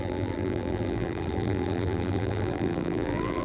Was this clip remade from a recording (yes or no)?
yes